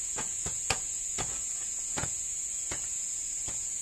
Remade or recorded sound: remade